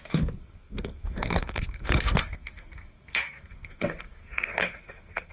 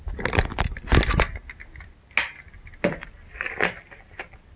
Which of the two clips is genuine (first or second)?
second